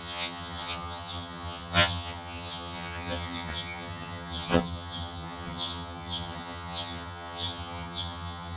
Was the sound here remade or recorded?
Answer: remade